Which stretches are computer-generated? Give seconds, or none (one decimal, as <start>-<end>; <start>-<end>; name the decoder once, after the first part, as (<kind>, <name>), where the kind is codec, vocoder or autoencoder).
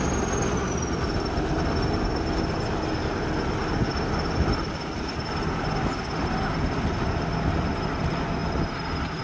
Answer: none